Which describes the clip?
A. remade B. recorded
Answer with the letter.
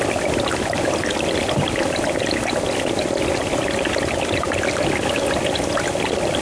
B